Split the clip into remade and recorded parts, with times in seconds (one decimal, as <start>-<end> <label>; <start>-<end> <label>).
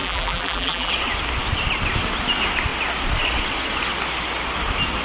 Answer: 0.0-0.9 remade; 0.9-5.0 recorded